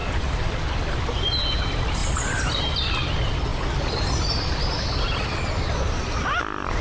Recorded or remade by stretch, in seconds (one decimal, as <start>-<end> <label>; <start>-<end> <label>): 0.0-0.5 remade; 0.5-2.0 recorded; 2.0-2.6 remade; 2.6-6.8 recorded